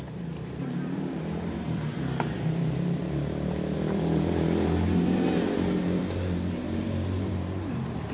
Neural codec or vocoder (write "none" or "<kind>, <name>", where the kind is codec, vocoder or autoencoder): vocoder, BigVGAN v2